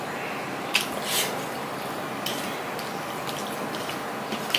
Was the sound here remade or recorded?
recorded